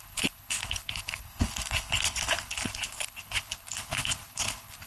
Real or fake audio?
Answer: fake